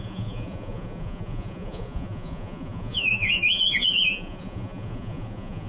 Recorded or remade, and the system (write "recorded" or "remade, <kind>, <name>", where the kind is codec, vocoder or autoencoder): remade, vocoder, Vocos